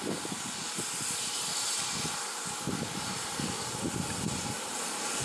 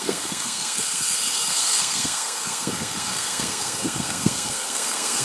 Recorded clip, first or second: first